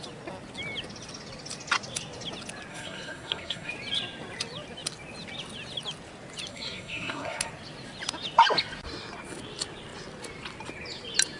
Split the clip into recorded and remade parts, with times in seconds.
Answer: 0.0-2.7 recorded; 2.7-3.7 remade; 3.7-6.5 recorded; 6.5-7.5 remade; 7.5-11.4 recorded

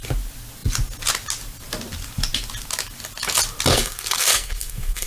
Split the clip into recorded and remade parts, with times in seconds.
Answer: 0.0-3.7 recorded; 3.7-5.1 remade

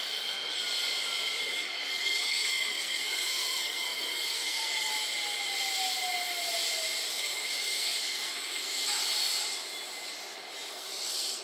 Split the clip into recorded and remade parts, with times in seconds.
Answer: 0.0-0.6 remade; 0.6-1.4 recorded; 1.4-4.9 remade; 4.9-7.1 recorded; 7.1-9.0 remade; 9.0-10.7 recorded; 10.7-11.4 remade